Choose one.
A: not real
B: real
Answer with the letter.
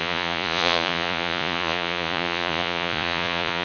A